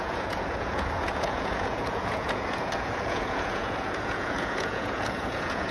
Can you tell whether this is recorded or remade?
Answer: remade